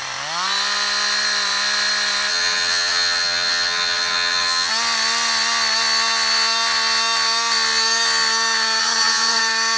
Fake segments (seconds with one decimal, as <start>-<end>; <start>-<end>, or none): 2.3-4.7; 8.8-9.4

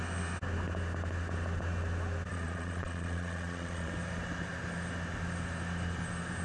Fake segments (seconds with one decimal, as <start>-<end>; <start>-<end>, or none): 2.3-3.9

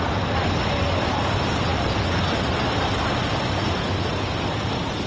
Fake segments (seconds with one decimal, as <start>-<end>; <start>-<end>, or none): none